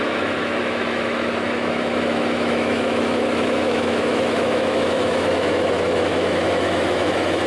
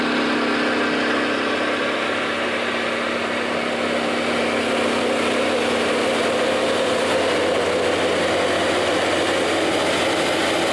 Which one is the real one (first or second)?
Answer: second